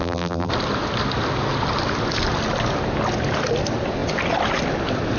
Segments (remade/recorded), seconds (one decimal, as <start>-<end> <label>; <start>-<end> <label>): 0.0-0.5 remade; 0.5-5.2 recorded